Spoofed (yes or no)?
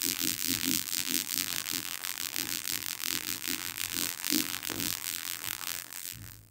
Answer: yes